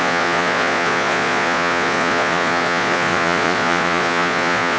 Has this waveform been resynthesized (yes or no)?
yes